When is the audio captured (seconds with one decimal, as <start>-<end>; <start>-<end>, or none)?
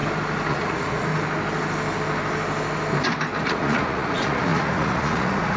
0.0-0.5; 1.1-3.4